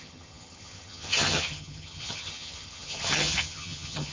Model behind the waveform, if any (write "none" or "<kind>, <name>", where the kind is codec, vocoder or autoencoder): vocoder, HiFi-GAN